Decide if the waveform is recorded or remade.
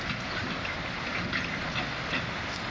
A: recorded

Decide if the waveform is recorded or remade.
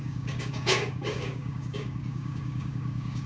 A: remade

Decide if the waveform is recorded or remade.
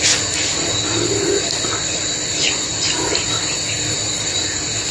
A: recorded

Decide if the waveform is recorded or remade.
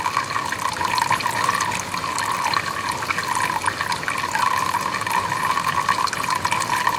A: recorded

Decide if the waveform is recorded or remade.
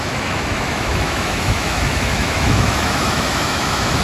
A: remade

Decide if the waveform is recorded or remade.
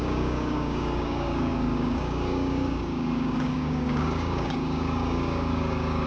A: remade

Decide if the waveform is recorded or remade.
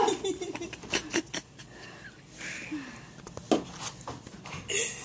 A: recorded